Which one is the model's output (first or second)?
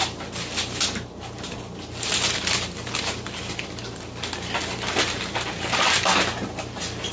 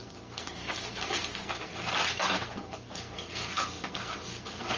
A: second